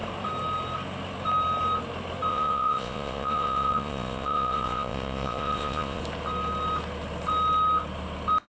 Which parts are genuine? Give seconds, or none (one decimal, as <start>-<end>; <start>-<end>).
0.0-2.3; 6.0-8.5